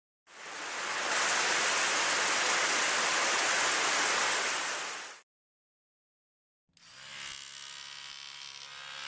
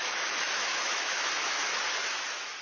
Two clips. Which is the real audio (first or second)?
first